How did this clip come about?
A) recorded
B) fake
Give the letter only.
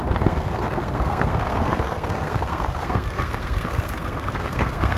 B